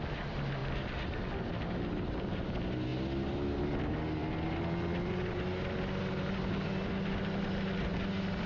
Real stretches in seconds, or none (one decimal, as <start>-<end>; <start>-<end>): 0.0-8.5